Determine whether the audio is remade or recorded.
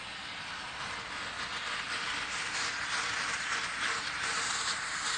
recorded